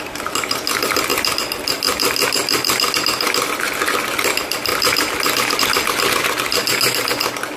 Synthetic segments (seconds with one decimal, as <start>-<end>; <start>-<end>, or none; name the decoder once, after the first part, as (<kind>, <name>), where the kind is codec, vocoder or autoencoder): none